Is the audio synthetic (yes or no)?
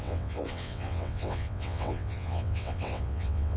yes